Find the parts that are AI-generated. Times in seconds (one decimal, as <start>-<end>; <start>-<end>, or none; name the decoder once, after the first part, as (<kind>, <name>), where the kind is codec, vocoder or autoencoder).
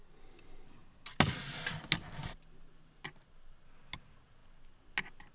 none